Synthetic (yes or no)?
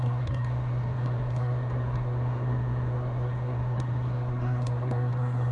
yes